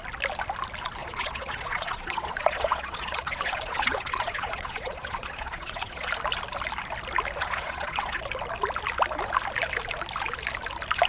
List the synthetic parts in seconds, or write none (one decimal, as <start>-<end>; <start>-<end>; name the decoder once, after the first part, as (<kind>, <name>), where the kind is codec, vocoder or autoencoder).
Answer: 1.0-6.1 (vocoder, Vocos); 7.4-8.2